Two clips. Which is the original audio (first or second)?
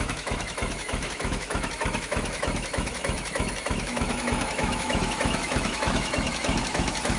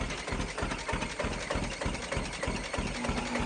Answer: second